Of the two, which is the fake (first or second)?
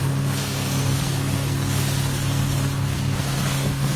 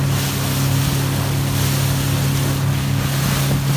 first